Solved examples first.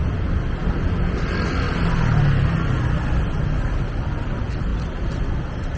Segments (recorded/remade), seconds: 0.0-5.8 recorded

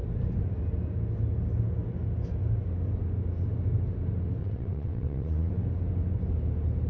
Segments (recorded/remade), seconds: 0.0-4.4 recorded; 4.4-5.5 remade; 5.5-6.9 recorded